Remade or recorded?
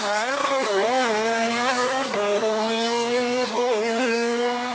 remade